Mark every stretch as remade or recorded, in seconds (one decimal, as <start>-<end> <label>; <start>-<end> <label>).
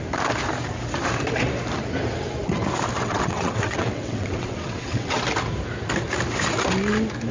0.0-3.0 recorded; 3.0-5.2 remade; 5.2-7.3 recorded